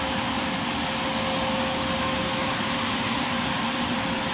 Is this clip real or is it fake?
real